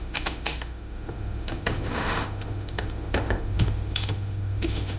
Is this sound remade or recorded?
remade